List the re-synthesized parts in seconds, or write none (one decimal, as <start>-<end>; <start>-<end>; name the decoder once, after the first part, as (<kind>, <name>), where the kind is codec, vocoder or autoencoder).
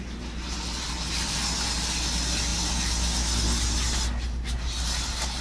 none